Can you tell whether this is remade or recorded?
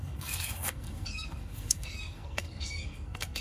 remade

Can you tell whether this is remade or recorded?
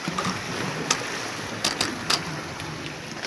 recorded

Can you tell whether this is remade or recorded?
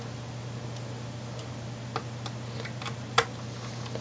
recorded